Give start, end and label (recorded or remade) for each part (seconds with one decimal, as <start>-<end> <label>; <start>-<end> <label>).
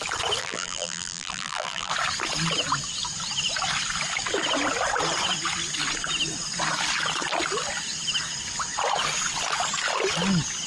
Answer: 0.0-0.4 recorded; 0.4-1.9 remade; 1.9-10.7 recorded